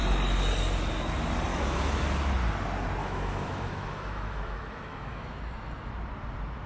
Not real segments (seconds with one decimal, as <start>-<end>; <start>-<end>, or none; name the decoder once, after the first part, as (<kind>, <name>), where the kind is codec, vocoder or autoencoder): 1.5-2.0 (autoencoder, DAC-VAE); 3.0-5.9